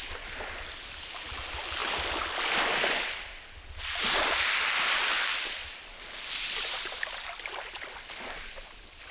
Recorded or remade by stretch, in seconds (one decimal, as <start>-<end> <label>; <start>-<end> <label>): 0.0-9.1 recorded